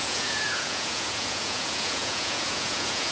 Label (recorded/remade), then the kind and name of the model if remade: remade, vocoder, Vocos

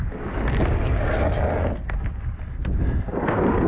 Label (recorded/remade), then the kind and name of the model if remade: recorded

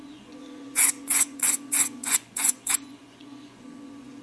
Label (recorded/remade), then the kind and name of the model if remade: remade, vocoder, Vocos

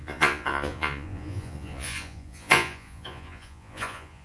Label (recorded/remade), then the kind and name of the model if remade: remade, vocoder, Vocos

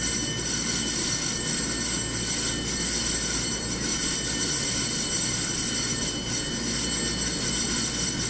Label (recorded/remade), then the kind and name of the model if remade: recorded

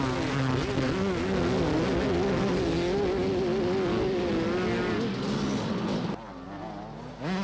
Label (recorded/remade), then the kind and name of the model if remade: recorded